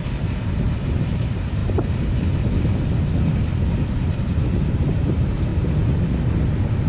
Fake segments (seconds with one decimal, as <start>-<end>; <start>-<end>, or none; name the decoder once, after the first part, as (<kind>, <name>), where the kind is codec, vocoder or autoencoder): 0.0-1.6 (vocoder, BigVGAN v2); 3.9-5.5